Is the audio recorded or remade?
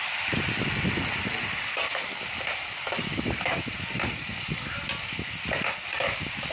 recorded